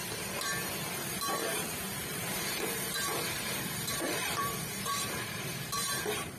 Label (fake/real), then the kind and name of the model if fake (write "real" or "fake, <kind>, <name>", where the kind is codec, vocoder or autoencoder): fake, vocoder, BigVGAN v2